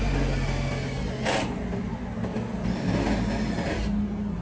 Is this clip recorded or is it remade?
recorded